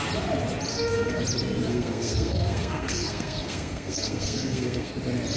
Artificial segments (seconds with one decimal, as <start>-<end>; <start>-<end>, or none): 0.7-1.2; 1.7-4.9